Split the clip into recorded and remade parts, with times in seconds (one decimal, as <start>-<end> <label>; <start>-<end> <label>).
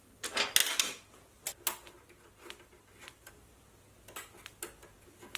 0.0-5.4 recorded